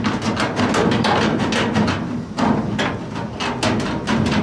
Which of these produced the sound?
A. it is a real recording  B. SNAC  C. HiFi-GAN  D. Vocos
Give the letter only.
A